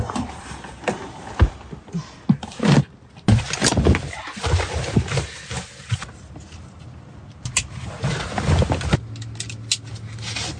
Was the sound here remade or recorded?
recorded